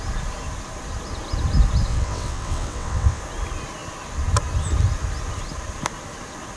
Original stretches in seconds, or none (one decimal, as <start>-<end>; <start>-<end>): 0.0-1.9; 3.2-6.6